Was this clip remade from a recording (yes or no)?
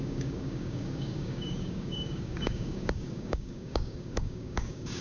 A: yes